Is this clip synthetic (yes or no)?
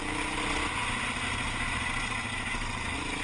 no